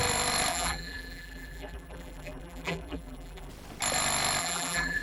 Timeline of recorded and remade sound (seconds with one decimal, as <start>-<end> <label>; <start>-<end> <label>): 0.0-0.5 recorded; 0.5-3.5 remade; 3.5-4.4 recorded; 4.4-5.0 remade